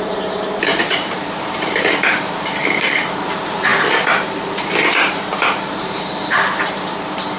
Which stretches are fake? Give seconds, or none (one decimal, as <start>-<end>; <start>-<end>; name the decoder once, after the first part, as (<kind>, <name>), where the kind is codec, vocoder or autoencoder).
0.0-7.4 (vocoder, BigVGAN v2)